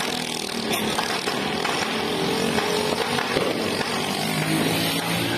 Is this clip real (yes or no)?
yes